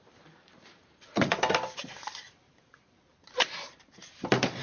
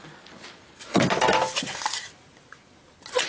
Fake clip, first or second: first